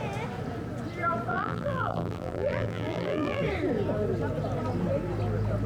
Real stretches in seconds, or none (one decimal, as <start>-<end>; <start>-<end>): 0.0-1.3; 3.4-5.7